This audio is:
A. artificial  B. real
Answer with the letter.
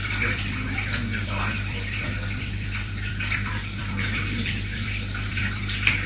A